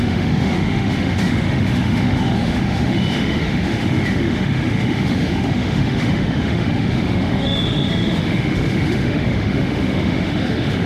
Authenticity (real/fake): fake